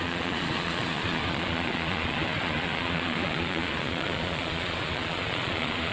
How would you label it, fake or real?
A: fake